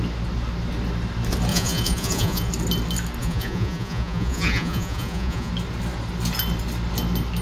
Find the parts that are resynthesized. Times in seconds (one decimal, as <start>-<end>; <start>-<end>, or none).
1.5-2.5; 3.2-5.5